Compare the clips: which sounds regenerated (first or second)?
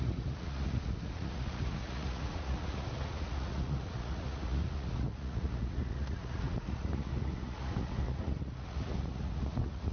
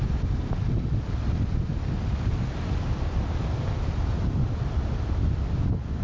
first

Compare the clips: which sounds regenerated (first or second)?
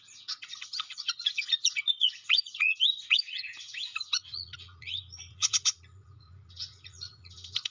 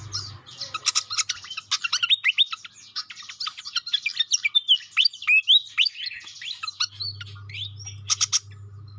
first